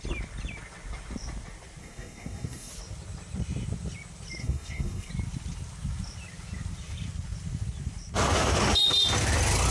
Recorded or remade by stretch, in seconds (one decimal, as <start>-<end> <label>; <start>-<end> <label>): 0.0-1.8 recorded; 1.8-2.7 remade; 2.7-4.4 recorded; 4.4-5.1 remade; 5.1-9.7 recorded